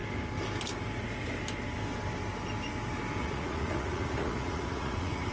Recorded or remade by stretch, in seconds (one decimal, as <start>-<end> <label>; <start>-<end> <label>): 0.0-3.2 recorded; 3.2-5.3 remade